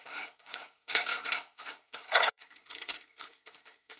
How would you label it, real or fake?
fake